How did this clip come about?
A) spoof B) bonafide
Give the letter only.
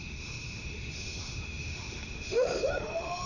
A